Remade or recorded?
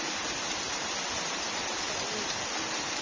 recorded